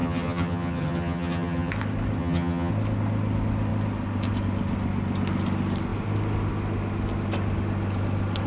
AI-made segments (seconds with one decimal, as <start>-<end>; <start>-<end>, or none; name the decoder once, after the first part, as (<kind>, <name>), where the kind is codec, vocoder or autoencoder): 0.0-1.7 (vocoder, HiFi-GAN); 2.2-2.7